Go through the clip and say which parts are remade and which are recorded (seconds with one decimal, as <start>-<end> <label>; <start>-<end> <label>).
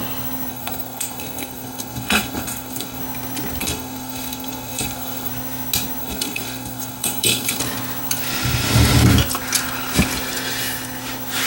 0.0-0.5 recorded; 0.5-3.0 remade; 3.0-3.6 recorded; 3.6-5.3 remade; 5.3-6.0 recorded; 6.0-7.6 remade; 7.6-11.5 recorded